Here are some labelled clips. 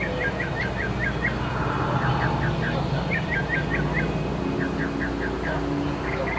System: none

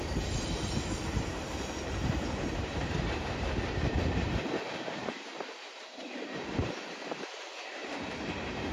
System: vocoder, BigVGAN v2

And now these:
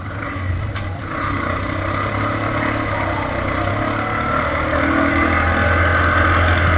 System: none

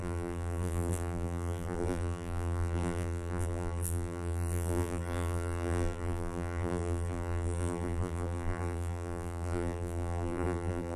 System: vocoder, BigVGAN v2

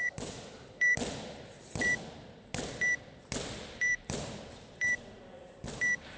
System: vocoder, BigVGAN v2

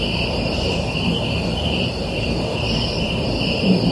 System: vocoder, BigVGAN v2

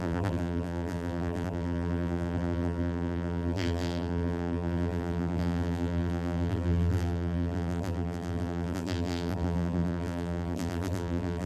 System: vocoder, BigVGAN v2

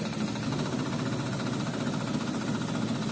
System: none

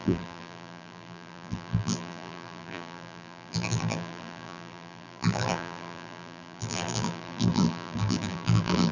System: vocoder, BigVGAN v2